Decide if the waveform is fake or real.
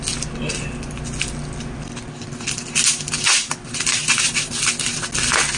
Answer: real